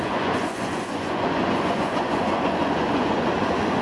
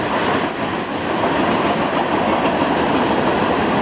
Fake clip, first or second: first